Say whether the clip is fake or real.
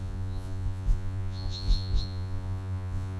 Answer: fake